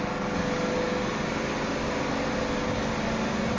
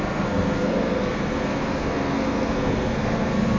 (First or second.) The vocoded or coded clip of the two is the second